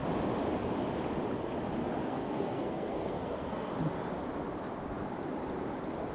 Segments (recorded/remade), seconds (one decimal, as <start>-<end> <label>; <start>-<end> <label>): 0.0-2.0 recorded; 2.0-3.7 remade; 3.7-6.1 recorded